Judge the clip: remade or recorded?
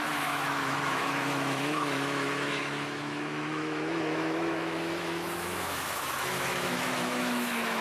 remade